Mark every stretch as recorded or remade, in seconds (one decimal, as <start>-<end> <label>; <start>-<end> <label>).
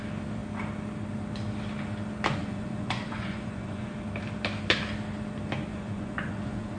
0.0-2.4 recorded; 2.4-3.9 remade; 3.9-5.7 recorded; 5.7-6.8 remade